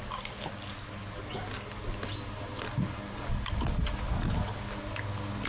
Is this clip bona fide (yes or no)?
yes